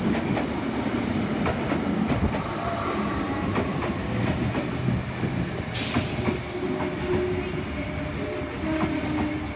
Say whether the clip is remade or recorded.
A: recorded